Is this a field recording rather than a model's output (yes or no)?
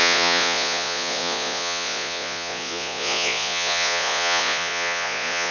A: no